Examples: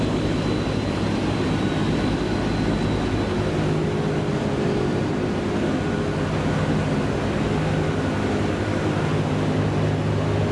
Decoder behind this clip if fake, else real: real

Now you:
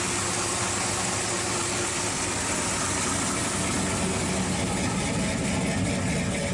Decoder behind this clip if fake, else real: real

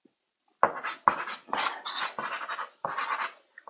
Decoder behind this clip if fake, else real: real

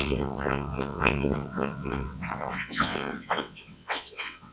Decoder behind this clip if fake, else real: fake, vocoder, WaveNeXt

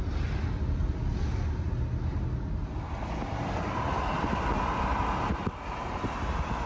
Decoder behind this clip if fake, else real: real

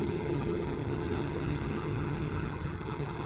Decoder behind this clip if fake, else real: fake, vocoder, HiFi-GAN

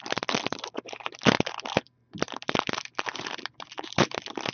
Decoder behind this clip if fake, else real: fake, vocoder, BigVGAN v2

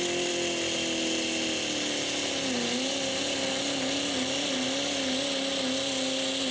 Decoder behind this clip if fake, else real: real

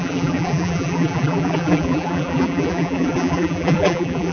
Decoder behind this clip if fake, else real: fake, vocoder, BigVGAN v2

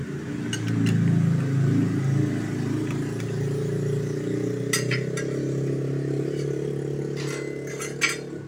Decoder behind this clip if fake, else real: real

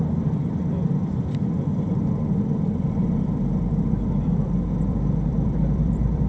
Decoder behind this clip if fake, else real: fake, vocoder, BigVGAN v2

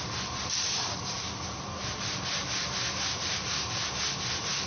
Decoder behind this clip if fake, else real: fake, vocoder, BigVGAN v2